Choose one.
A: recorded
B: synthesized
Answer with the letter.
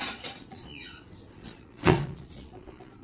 B